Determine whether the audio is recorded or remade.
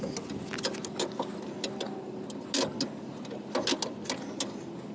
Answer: recorded